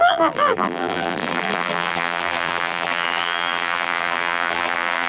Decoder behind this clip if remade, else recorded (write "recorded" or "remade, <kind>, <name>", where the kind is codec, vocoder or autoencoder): remade, vocoder, BigVGAN v2